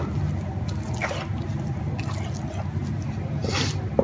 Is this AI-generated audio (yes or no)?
no